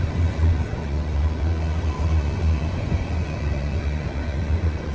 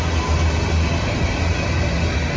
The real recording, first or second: second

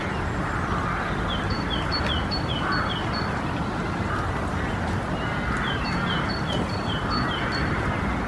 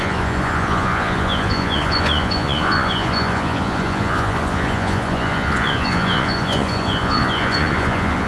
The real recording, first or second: first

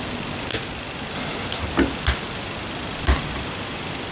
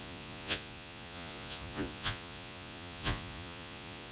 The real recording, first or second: first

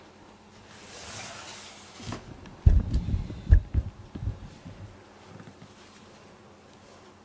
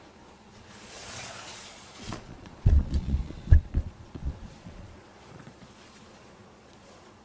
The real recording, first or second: first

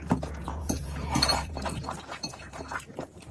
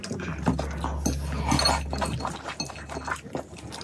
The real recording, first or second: second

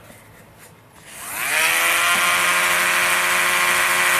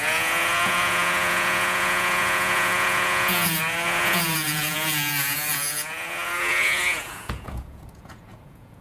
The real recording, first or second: first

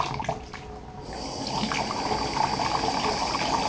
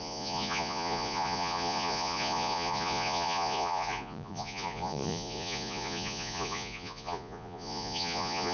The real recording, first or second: first